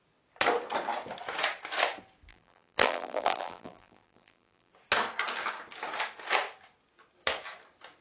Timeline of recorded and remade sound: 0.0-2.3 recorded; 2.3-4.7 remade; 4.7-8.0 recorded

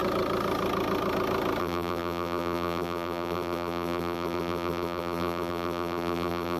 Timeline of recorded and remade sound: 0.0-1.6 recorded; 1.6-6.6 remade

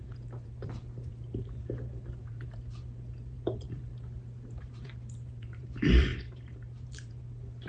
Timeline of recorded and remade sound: 0.0-1.6 remade; 1.6-2.2 recorded; 2.2-3.9 remade; 3.9-4.6 recorded; 4.6-7.7 remade